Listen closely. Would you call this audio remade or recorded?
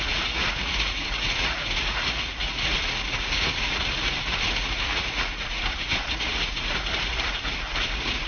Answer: remade